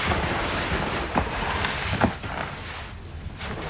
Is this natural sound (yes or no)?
yes